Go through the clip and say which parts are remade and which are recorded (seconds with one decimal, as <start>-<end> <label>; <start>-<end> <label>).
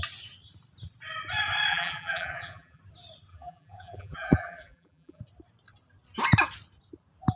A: 0.0-1.7 recorded; 1.7-2.8 remade; 2.8-3.3 recorded; 3.3-5.2 remade; 5.2-7.4 recorded